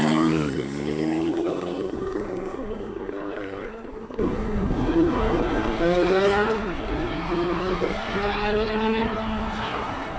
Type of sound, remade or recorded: remade